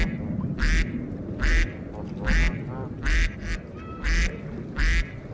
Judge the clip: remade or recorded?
recorded